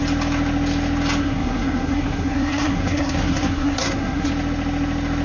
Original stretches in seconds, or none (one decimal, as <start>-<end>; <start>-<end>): 0.0-1.2; 4.3-5.2